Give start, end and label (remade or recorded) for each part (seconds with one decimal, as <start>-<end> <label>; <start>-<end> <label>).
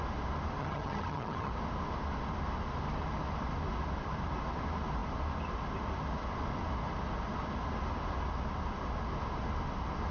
0.0-0.6 recorded; 0.6-1.5 remade; 1.5-10.1 recorded